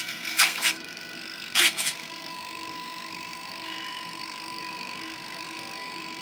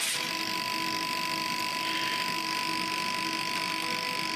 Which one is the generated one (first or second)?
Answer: first